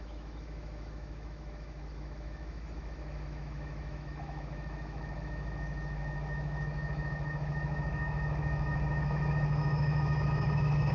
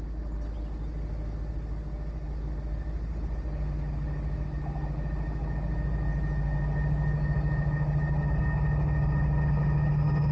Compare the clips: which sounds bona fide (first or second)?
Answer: second